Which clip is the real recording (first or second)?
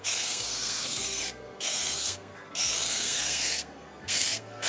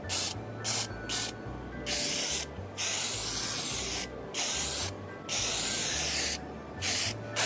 second